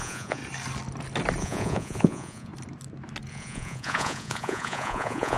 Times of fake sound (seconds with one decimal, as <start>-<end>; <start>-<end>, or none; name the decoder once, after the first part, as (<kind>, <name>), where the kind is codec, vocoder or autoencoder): 0.0-0.4 (vocoder, Vocos); 1.4-2.5; 3.3-5.4

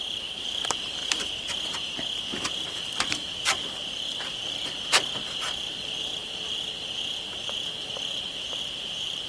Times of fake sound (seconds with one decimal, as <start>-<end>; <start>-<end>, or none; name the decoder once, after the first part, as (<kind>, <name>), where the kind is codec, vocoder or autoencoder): 0.0-1.0 (vocoder, BigVGAN v2); 2.5-9.3

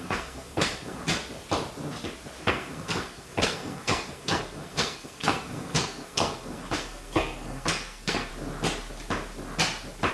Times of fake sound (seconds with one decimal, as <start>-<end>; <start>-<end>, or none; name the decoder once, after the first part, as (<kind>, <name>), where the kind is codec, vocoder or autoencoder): 0.0-1.0 (codec, SNAC); 2.4-8.3

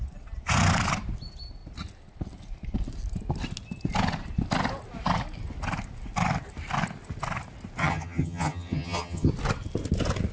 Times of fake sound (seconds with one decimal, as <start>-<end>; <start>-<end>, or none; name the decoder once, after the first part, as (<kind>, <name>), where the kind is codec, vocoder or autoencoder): 7.8-9.3 (vocoder, HiFi-GAN)

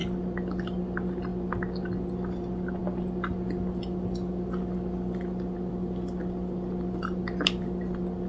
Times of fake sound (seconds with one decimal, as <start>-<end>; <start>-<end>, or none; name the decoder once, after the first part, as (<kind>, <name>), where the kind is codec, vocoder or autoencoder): none

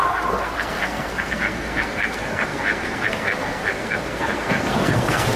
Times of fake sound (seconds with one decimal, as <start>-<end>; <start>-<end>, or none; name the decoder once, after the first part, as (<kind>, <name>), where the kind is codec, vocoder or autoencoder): 0.0-5.4 (codec, SNAC)

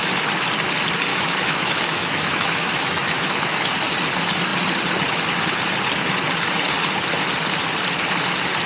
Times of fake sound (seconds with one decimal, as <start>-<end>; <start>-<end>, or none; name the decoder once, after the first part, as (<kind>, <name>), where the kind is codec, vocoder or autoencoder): 1.1-3.7 (autoencoder, DAC-VAE)